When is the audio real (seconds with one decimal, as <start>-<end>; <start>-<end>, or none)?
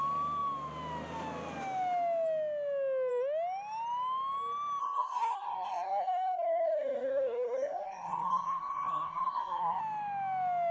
0.0-4.8; 9.8-10.7